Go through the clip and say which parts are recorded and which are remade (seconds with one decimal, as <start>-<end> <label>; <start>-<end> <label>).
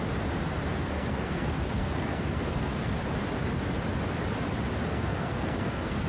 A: 0.0-0.7 recorded; 0.7-3.0 remade; 3.0-4.9 recorded; 4.9-6.1 remade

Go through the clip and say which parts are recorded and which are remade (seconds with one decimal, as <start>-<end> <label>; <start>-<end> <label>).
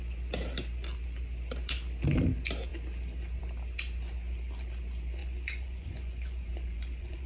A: 0.0-5.2 recorded; 5.2-7.3 remade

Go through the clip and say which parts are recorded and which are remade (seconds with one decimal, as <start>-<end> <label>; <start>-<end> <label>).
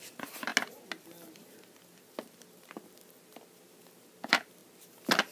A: 0.0-5.3 recorded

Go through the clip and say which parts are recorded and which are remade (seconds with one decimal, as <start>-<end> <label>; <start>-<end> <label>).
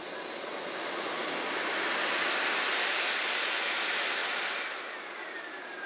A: 0.0-5.9 recorded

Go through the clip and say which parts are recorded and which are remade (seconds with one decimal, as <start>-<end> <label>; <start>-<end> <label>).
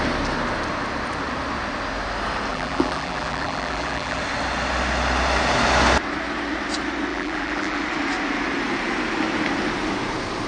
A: 0.0-2.5 recorded; 2.5-4.2 remade; 4.2-7.1 recorded; 7.1-7.8 remade; 7.8-10.5 recorded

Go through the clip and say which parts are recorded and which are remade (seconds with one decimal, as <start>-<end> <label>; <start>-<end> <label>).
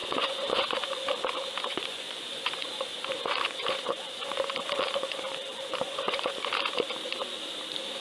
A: 0.0-1.1 remade; 1.1-1.7 recorded; 1.7-6.5 remade; 6.5-8.0 recorded